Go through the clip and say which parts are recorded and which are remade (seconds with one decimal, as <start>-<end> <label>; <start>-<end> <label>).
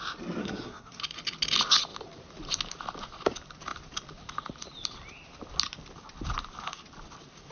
0.0-0.4 recorded; 0.4-1.0 remade; 1.0-7.5 recorded